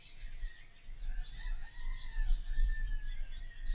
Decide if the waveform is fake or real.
real